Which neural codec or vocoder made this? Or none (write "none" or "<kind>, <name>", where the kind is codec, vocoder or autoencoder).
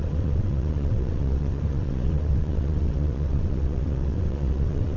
vocoder, WaveNeXt